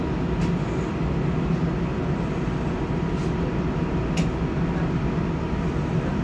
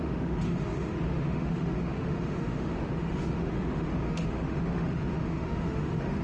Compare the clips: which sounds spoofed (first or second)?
second